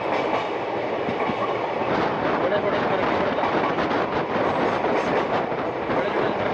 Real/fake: real